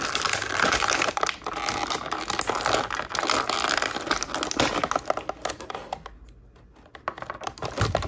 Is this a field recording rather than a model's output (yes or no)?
yes